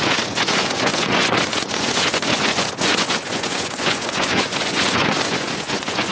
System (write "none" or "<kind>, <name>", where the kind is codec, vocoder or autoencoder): vocoder, Vocos